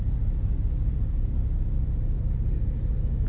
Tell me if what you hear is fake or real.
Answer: real